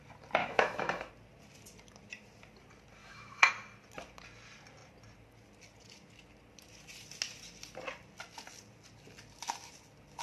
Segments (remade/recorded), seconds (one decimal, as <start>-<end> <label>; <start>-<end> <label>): 0.0-0.4 recorded; 0.4-1.1 remade; 1.1-3.0 recorded; 3.0-3.5 remade; 3.5-10.2 recorded